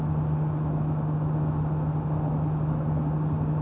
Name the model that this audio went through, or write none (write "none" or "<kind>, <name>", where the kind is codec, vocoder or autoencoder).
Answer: none